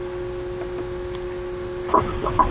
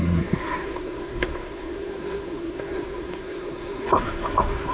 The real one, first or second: first